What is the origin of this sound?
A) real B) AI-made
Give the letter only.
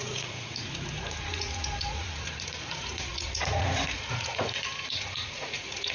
B